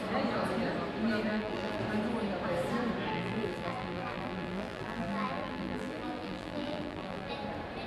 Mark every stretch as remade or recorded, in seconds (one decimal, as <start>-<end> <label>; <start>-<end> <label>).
0.0-1.3 recorded; 1.3-1.8 remade; 1.8-3.1 recorded; 3.1-7.3 remade; 7.3-7.9 recorded